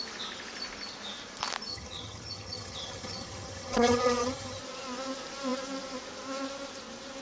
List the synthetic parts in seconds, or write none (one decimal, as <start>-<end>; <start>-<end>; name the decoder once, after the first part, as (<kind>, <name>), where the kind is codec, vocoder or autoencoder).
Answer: 1.7-4.6 (vocoder, HiFi-GAN)